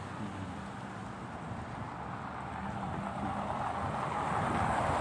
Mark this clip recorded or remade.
recorded